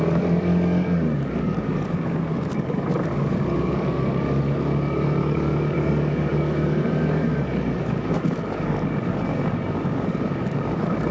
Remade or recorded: remade